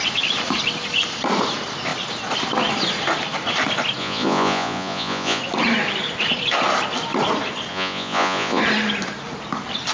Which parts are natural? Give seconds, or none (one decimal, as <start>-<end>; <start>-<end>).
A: 0.0-4.0; 5.4-7.7; 8.6-9.9